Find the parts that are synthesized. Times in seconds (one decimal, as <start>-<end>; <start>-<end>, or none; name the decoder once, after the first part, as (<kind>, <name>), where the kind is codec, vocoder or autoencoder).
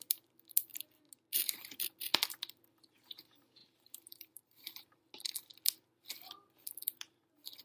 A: 3.6-5.0 (vocoder, BigVGAN v2)